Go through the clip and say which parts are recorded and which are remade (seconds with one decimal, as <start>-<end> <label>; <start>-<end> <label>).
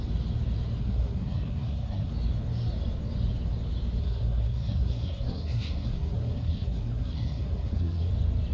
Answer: 0.0-0.8 recorded; 0.8-2.1 remade; 2.1-4.0 recorded; 4.0-8.1 remade; 8.1-8.5 recorded